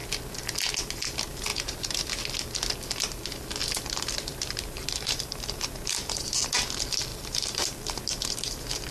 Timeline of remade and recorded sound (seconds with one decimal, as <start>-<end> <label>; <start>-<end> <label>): 0.0-1.5 recorded; 1.5-2.1 remade; 2.1-4.3 recorded; 4.3-6.2 remade; 6.2-7.1 recorded; 7.1-8.0 remade; 8.0-8.9 recorded